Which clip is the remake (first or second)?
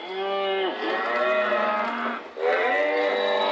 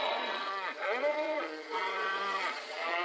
second